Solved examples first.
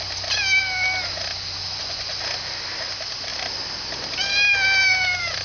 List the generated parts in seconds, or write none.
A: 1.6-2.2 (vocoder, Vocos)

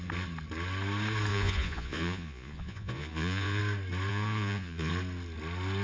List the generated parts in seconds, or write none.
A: 1.3-3.6 (vocoder, Vocos); 4.1-4.9